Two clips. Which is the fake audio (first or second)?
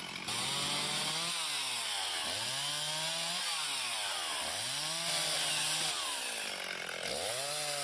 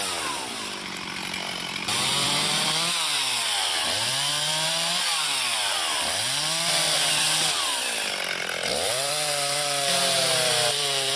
second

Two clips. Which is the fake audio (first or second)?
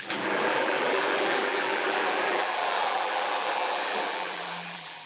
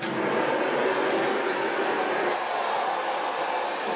first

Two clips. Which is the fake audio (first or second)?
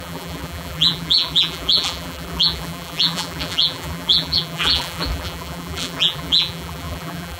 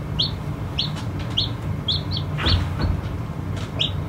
first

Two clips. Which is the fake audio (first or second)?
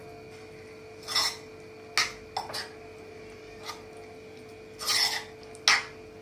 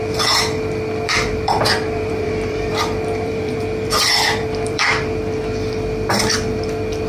second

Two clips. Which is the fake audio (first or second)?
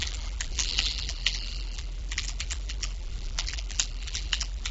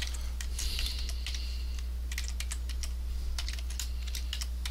first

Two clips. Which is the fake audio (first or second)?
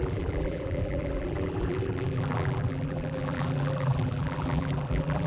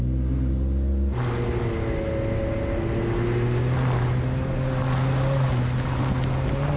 first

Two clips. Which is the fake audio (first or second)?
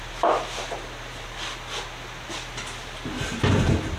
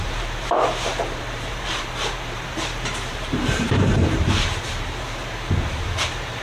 second